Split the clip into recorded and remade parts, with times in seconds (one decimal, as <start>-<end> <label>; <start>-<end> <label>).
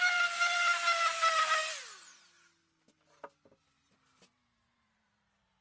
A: 0.0-1.6 remade; 1.6-3.6 recorded; 3.6-5.6 remade